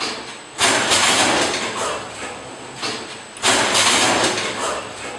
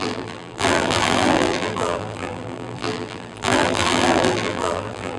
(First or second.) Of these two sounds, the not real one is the second